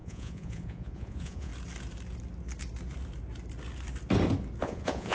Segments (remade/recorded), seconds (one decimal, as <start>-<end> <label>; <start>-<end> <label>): 0.0-1.5 remade; 1.5-4.6 recorded; 4.6-5.1 remade